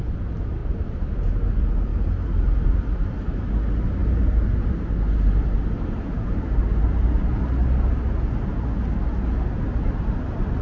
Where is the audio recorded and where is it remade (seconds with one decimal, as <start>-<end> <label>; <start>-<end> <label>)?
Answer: 0.0-0.6 recorded; 0.6-1.3 remade; 1.3-1.9 recorded; 1.9-3.5 remade; 3.5-4.0 recorded; 4.0-7.4 remade; 7.4-10.6 recorded